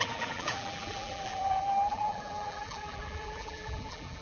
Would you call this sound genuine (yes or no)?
no